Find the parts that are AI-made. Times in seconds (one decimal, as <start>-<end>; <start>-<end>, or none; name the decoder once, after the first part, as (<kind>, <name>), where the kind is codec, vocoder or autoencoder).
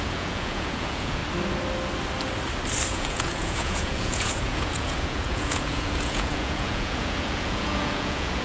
0.0-1.2 (vocoder, Vocos); 2.9-8.4